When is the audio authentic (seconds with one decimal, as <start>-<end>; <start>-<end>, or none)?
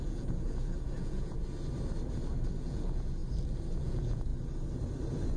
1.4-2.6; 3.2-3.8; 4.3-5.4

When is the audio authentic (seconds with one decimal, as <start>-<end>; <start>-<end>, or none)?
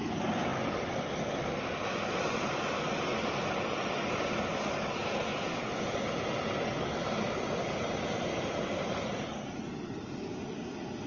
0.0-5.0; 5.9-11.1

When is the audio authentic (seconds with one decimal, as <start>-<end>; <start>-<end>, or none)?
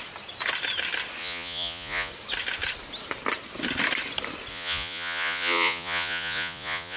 0.0-1.2; 2.1-4.5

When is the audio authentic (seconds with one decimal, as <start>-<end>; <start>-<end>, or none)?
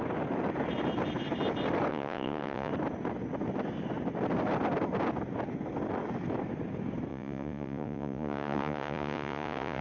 0.0-1.9; 2.7-7.1